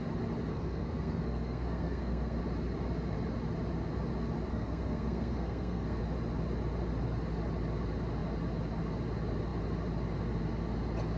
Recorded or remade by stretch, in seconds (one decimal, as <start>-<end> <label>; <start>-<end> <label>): 0.0-0.5 recorded; 0.5-2.4 remade; 2.4-4.5 recorded; 4.5-6.0 remade; 6.0-11.2 recorded